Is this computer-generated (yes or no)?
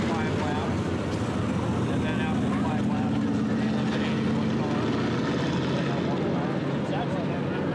no